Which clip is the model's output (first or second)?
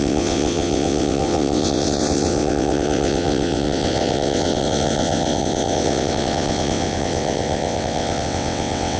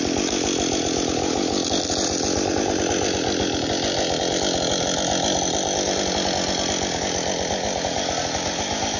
first